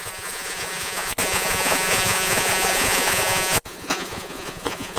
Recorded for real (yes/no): no